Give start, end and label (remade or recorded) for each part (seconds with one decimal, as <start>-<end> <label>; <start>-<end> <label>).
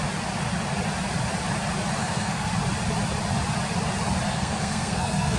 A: 0.0-2.0 recorded; 2.0-2.5 remade; 2.5-4.3 recorded; 4.3-5.4 remade